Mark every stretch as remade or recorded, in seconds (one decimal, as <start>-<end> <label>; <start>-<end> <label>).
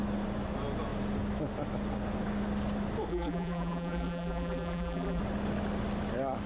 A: 0.0-3.1 recorded; 3.1-5.2 remade; 5.2-6.5 recorded